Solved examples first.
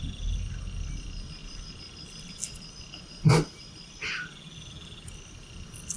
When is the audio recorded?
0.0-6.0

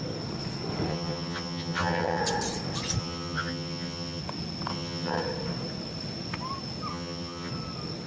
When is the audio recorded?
0.0-0.9; 2.2-3.0; 4.2-4.7; 5.2-6.9; 7.5-8.1

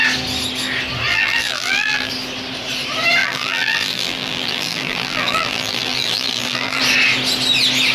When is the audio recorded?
0.0-1.1; 2.1-3.2; 6.8-7.9

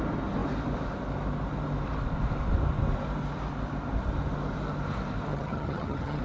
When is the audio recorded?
0.0-5.3

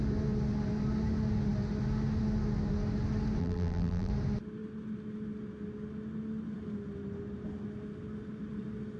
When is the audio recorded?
0.0-3.4; 4.1-9.0